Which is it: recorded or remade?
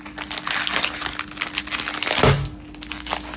recorded